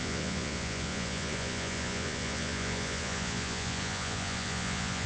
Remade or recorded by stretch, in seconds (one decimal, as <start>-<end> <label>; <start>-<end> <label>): 0.0-5.1 remade